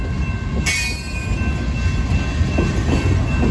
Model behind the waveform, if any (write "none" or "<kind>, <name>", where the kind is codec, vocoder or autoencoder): none